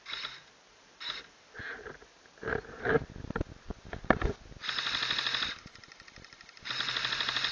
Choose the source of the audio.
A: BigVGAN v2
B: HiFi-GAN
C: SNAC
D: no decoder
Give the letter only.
D